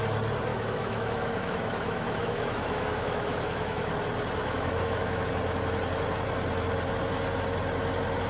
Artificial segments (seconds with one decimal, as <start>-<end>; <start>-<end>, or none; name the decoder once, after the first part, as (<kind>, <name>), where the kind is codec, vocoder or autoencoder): 0.5-3.9 (autoencoder, DAC-VAE); 4.4-5.3